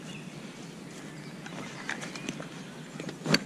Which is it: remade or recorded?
recorded